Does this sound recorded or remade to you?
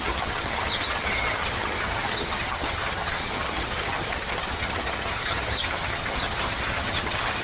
remade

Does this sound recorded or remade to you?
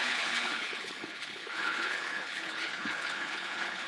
remade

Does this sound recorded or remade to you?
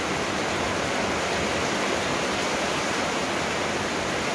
recorded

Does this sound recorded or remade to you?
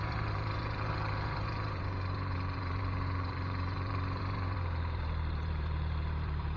remade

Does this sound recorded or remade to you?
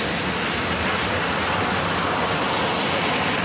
recorded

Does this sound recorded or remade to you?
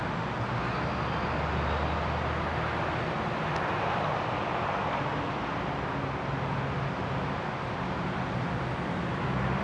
recorded